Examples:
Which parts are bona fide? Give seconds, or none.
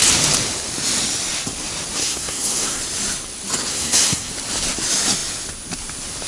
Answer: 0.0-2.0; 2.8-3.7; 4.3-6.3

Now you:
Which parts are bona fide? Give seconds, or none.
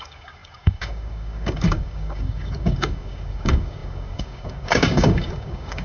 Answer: none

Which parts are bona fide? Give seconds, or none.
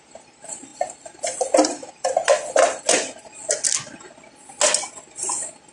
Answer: 0.0-5.7